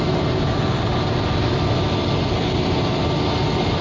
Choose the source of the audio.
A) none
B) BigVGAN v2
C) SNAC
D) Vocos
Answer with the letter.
A